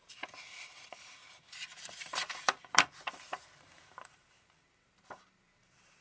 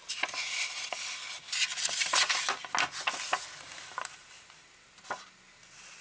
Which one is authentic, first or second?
second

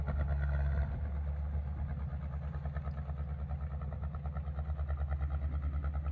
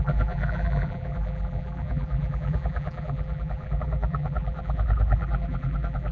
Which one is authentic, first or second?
first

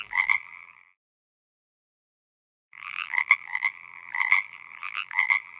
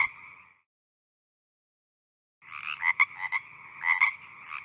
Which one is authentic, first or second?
second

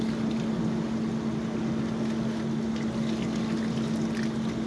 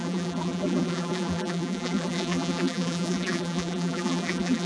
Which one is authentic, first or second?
first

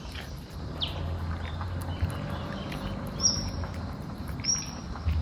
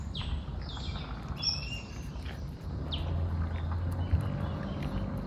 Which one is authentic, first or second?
second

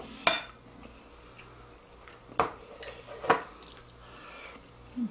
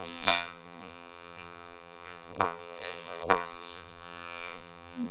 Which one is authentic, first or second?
first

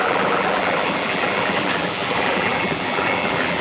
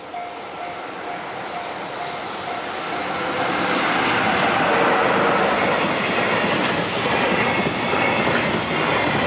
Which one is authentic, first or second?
second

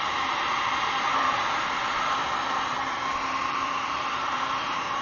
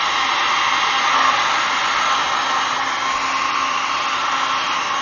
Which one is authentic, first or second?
second